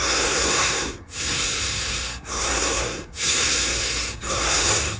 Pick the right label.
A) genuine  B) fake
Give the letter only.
B